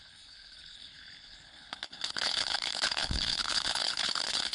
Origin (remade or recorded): remade